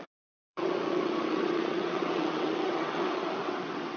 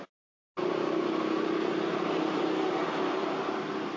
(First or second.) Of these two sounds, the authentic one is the second